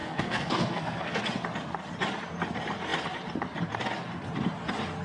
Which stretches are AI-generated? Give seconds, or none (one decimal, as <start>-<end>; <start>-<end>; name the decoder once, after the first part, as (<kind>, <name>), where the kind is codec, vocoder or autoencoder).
0.0-1.2 (codec, SNAC)